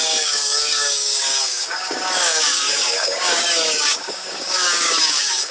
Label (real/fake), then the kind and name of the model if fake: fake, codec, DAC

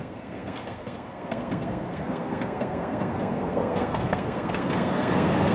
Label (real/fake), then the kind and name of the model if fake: fake, codec, SNAC